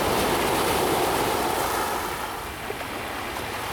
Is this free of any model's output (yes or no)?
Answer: yes